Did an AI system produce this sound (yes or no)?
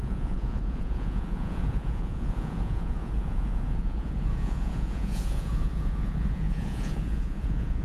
yes